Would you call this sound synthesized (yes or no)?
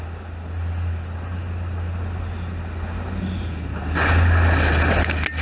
no